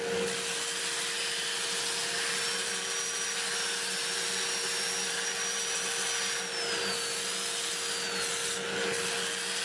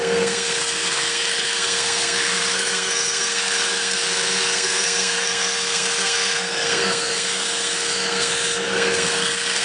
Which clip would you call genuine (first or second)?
first